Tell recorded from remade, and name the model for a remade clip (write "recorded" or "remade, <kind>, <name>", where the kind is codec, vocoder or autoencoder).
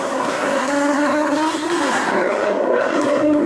remade, codec, SNAC